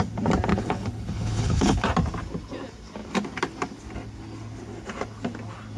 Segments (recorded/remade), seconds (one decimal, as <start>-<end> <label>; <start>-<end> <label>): 0.0-0.5 recorded; 0.5-1.8 remade; 1.8-5.8 recorded